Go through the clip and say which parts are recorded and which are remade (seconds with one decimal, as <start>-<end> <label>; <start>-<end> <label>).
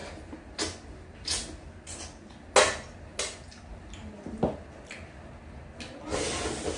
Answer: 0.0-6.8 recorded